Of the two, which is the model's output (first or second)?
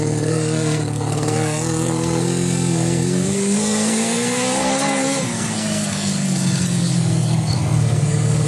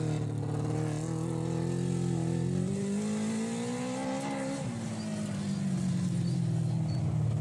first